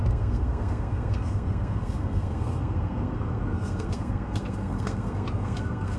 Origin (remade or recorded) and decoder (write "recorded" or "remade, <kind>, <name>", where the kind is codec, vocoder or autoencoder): remade, codec, SNAC